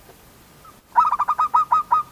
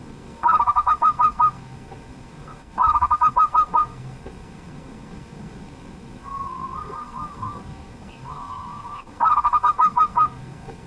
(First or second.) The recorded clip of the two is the first